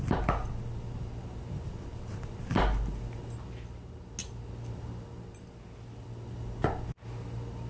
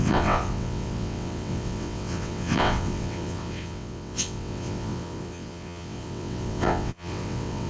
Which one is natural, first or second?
first